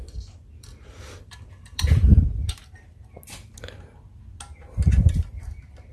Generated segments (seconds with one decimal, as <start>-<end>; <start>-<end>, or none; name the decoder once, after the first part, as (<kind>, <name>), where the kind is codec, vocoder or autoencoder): 0.5-2.6 (vocoder, BigVGAN v2); 4.9-5.9